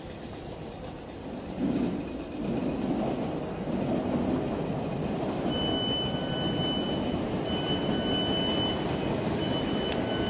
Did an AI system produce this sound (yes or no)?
no